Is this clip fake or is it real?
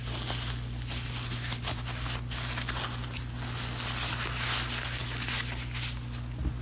real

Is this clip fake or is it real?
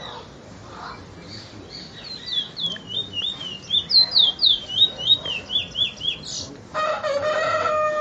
real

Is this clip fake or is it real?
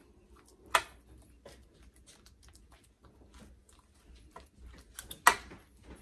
real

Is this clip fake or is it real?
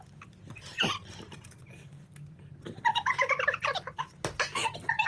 real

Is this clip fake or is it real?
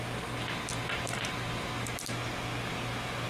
real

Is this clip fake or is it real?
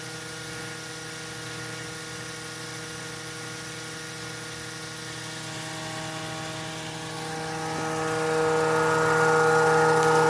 real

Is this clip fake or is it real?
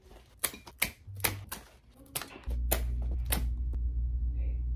real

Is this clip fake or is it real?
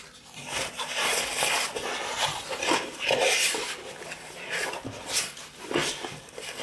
real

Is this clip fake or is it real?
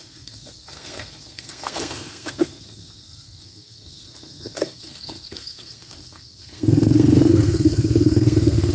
fake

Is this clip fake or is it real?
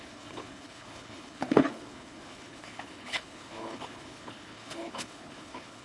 fake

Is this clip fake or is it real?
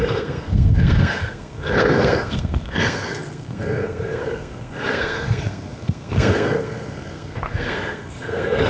fake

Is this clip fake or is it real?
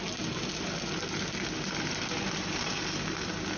real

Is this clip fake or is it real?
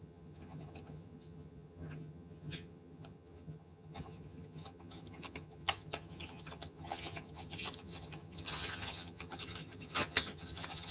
fake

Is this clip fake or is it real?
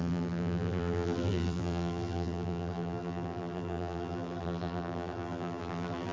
fake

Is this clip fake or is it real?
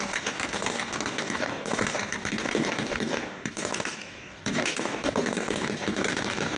fake